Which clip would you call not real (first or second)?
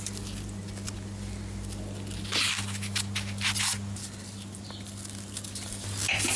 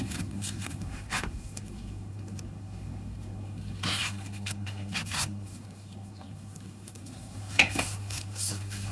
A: second